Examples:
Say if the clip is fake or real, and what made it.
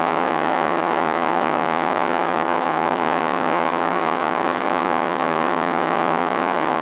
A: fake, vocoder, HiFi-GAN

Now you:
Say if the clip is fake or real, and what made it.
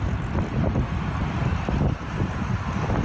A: fake, vocoder, BigVGAN v2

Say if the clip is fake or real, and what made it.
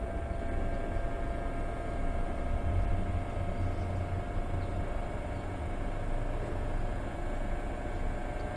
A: real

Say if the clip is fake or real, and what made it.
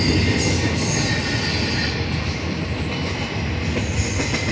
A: real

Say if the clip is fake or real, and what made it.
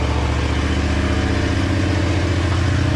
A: real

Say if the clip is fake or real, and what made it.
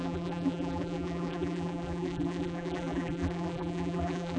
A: fake, vocoder, BigVGAN v2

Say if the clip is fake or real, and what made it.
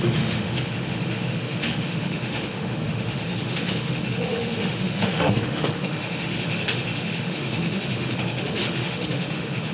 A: fake, autoencoder, DAC-VAE